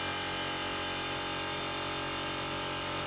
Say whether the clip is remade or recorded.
recorded